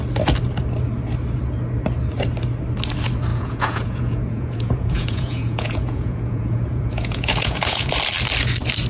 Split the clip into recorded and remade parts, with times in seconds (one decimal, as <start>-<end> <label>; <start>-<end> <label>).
0.0-3.3 recorded; 3.3-7.9 remade; 7.9-8.9 recorded